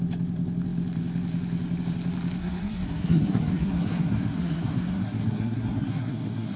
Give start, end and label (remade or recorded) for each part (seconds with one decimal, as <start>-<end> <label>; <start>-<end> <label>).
0.0-2.4 recorded; 2.4-6.6 remade